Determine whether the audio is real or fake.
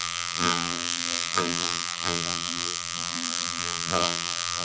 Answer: fake